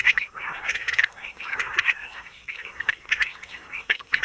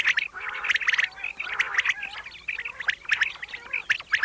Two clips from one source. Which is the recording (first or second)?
second